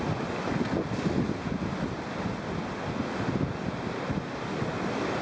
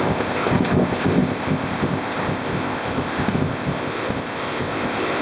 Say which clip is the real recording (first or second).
first